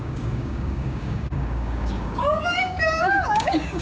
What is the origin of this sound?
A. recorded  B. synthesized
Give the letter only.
B